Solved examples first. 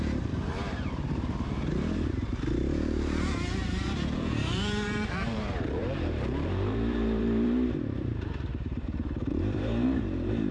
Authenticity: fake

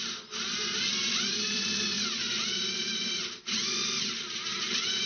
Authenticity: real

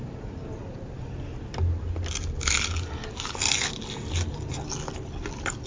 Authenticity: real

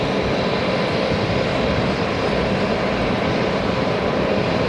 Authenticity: fake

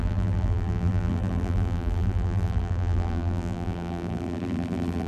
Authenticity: fake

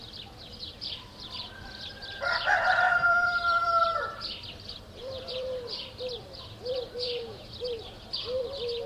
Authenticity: fake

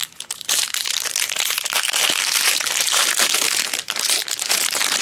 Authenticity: fake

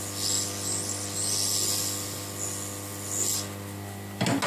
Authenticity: real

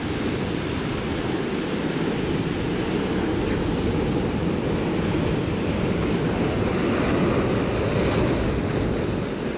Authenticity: real